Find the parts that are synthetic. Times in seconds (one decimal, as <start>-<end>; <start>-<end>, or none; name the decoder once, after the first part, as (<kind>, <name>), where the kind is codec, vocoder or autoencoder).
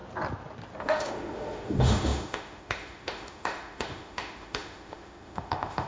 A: 0.8-5.9 (autoencoder, DAC-VAE)